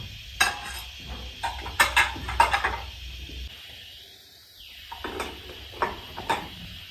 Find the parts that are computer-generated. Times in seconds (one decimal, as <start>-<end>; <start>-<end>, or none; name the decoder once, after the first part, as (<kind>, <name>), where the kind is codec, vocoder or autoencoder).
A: none